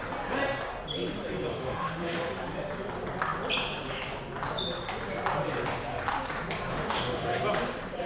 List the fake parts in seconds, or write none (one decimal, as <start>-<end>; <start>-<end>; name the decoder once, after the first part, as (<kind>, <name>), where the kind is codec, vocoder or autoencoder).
1.5-2.3 (autoencoder, DAC-VAE); 6.7-7.4